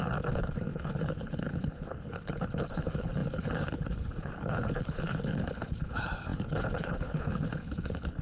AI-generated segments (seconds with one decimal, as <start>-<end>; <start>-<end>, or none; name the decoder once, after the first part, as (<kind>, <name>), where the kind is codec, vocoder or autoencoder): 0.0-8.2 (codec, HILCodec)